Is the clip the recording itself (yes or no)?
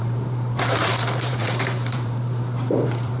no